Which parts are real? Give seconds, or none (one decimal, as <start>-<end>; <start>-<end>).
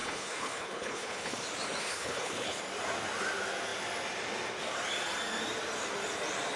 1.4-1.8; 2.6-6.6